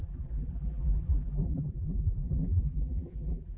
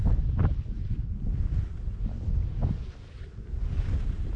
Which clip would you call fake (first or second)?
first